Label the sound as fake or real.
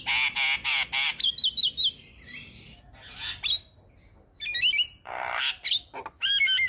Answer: real